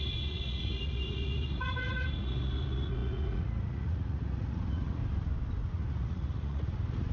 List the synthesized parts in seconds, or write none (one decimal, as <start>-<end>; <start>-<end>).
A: 0.0-5.0; 5.7-7.1